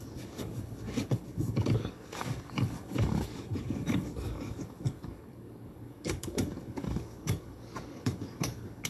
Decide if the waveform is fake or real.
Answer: fake